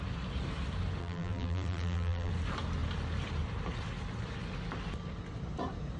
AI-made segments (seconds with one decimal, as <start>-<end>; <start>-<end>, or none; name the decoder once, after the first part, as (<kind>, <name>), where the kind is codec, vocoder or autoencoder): 1.0-2.3 (vocoder, BigVGAN v2)